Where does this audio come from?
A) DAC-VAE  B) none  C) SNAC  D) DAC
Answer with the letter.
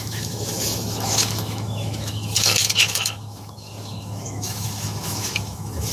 A